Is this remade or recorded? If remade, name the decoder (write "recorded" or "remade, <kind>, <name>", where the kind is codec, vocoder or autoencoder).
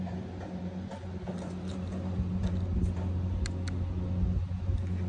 recorded